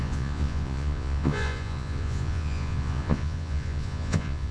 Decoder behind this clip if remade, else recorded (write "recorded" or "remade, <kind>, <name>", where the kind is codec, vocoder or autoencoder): remade, vocoder, Vocos